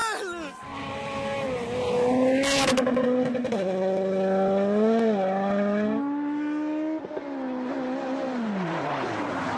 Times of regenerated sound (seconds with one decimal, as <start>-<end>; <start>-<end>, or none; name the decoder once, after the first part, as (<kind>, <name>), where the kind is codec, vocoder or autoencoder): none